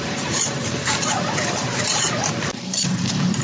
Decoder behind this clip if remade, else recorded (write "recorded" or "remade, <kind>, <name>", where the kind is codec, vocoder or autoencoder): remade, vocoder, BigVGAN v2